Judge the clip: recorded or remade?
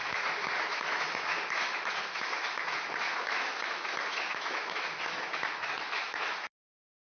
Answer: remade